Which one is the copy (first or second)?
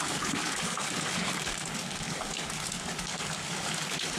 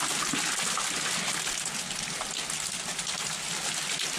first